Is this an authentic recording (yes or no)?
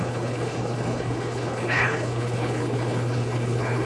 no